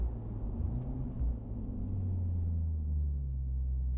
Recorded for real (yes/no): yes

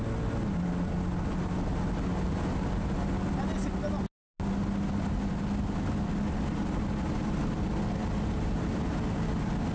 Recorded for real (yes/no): yes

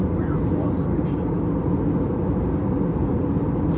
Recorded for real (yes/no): yes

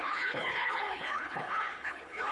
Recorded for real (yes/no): no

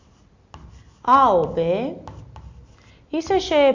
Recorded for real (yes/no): yes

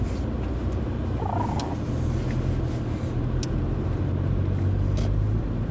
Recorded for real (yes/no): yes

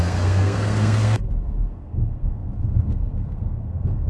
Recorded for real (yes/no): no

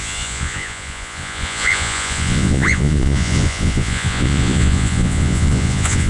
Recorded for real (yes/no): no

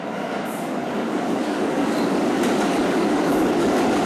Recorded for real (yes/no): no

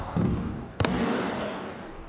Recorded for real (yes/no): no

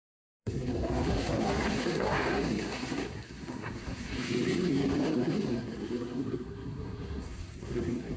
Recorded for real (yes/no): no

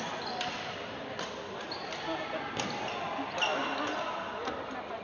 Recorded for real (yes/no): yes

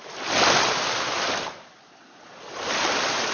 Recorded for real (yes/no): yes